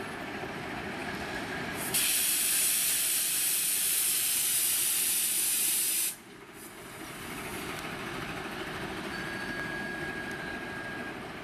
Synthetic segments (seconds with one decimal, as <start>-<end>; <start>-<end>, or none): 1.0-5.8; 7.5-9.1